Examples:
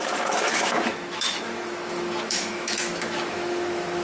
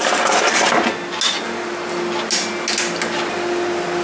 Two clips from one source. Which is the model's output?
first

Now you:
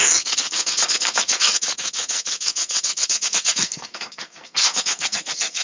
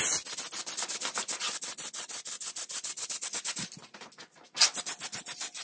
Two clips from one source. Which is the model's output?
first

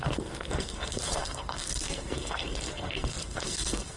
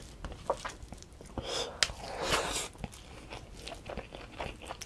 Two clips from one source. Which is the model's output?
first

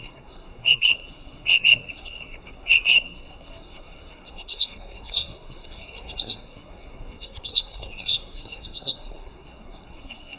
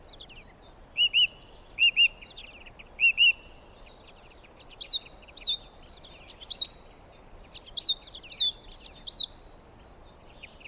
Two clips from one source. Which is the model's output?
first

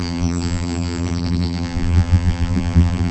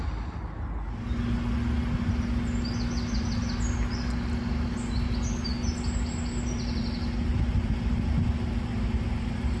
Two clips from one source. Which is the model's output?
first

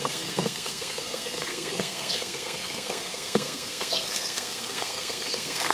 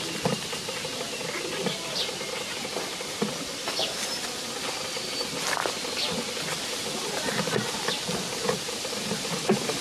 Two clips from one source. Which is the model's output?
first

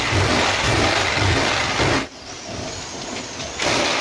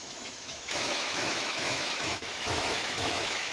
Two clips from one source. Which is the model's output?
second